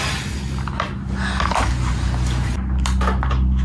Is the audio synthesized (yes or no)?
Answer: no